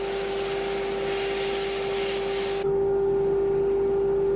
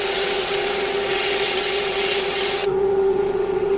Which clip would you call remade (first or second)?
second